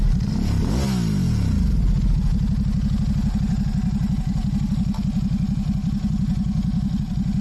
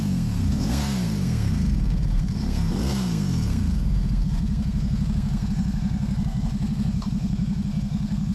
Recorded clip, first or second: first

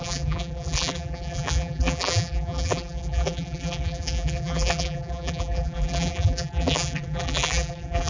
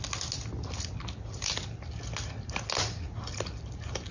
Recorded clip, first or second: second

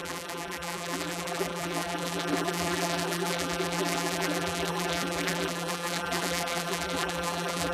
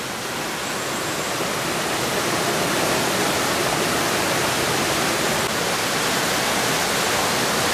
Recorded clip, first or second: second